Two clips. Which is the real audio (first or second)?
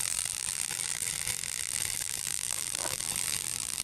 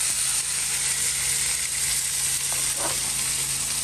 second